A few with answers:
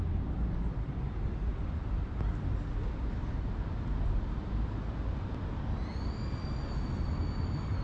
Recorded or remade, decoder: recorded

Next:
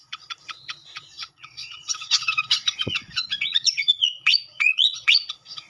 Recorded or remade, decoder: remade, vocoder, Vocos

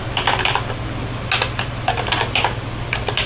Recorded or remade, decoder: recorded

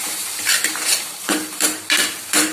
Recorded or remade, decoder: remade, vocoder, BigVGAN v2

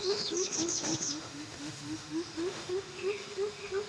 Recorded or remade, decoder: remade, autoencoder, DAC-VAE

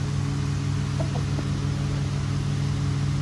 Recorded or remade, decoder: recorded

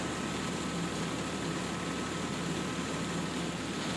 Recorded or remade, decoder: recorded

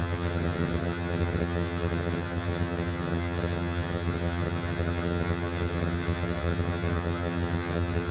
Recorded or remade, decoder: remade, vocoder, HiFi-GAN